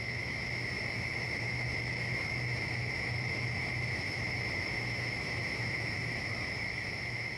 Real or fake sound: fake